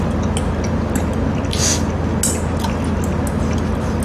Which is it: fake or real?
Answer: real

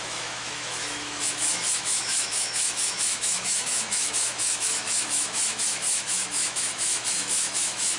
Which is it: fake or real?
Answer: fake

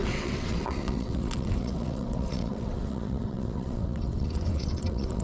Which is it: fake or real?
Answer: fake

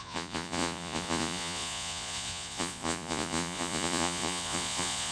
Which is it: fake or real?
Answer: fake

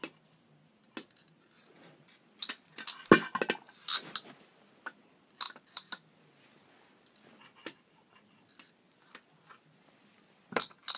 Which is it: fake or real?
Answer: real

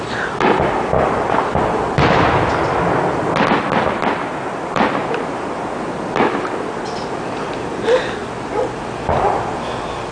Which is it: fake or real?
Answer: real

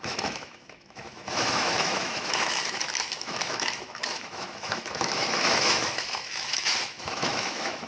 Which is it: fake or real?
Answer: fake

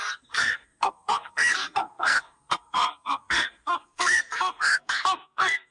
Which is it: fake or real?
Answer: fake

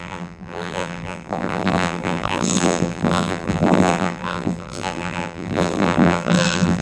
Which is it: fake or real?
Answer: fake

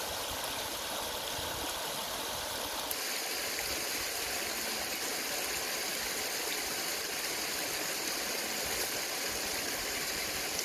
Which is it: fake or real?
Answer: real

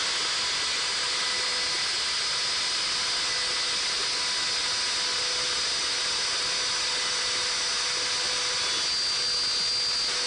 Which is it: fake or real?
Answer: real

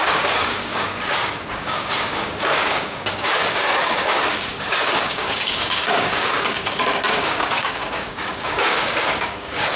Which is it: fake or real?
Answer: fake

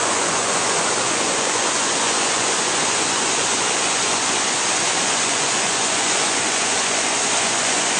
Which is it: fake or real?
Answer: fake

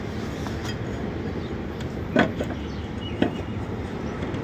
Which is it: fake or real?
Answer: real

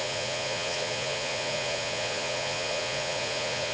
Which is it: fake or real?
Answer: fake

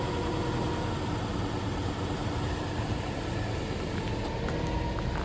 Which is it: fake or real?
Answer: real